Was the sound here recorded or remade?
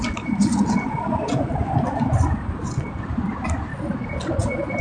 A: recorded